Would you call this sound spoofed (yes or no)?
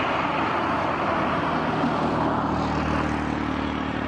no